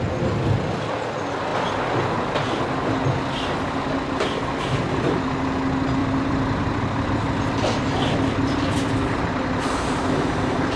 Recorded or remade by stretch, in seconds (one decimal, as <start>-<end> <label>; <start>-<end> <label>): 0.0-6.0 recorded; 6.0-7.1 remade; 7.1-10.8 recorded